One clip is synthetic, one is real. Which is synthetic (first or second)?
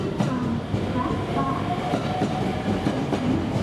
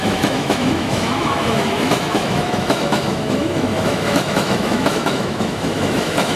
second